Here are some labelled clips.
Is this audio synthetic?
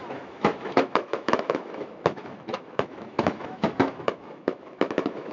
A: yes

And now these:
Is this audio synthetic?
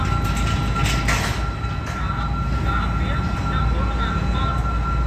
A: no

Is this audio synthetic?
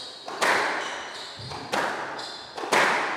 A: no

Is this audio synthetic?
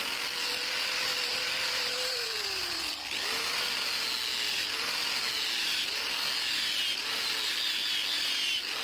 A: no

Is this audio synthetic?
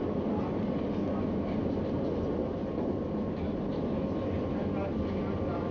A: no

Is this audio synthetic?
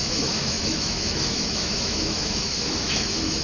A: yes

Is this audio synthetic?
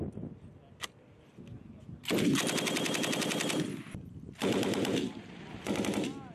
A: no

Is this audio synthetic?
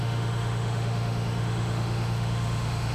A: yes